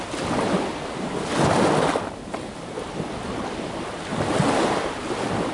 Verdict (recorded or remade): recorded